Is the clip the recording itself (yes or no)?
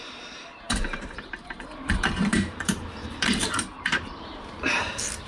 no